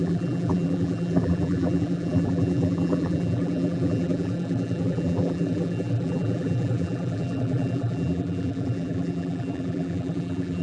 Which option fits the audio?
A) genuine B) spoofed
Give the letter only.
B